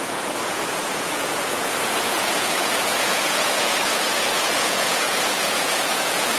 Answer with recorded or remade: remade